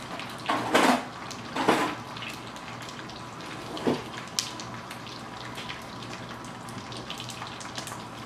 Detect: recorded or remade recorded